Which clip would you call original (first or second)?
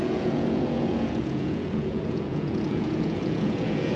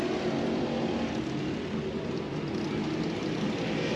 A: second